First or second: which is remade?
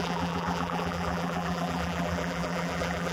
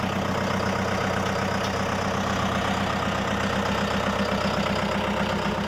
first